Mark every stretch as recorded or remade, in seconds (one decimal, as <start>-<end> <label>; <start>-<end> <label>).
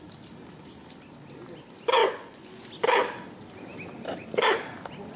0.0-2.0 recorded; 2.0-2.6 remade; 2.6-5.2 recorded